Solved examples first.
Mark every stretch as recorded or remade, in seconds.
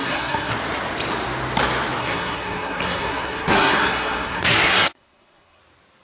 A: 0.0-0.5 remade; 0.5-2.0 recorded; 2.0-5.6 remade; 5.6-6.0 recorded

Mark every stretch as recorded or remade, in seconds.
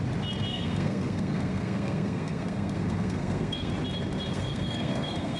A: 0.0-0.5 recorded; 0.5-3.7 remade; 3.7-4.3 recorded; 4.3-5.4 remade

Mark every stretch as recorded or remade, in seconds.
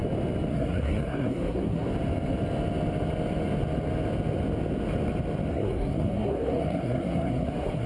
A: 0.0-0.5 recorded; 0.5-1.9 remade; 1.9-5.5 recorded; 5.5-7.9 remade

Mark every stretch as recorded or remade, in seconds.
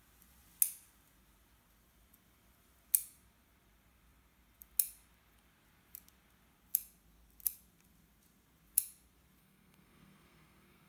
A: 0.0-9.4 recorded; 9.4-10.9 remade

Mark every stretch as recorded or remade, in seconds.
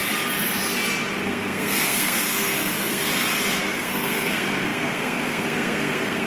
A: 0.0-1.2 recorded; 1.2-3.1 remade; 3.1-3.6 recorded; 3.6-6.3 remade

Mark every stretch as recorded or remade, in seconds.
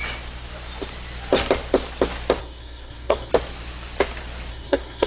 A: 0.0-2.4 recorded; 2.4-3.3 remade; 3.3-4.5 recorded; 4.5-5.1 remade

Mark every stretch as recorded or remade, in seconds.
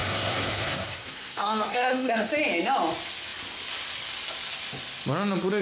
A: 0.0-2.3 remade; 2.3-5.6 recorded